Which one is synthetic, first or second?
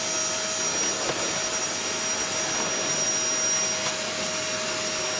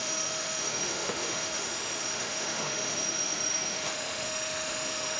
second